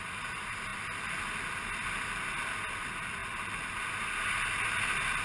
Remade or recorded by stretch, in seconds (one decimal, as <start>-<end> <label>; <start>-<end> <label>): 0.0-5.2 recorded